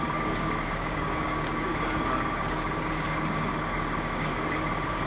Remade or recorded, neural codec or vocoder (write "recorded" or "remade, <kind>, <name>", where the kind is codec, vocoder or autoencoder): remade, codec, DAC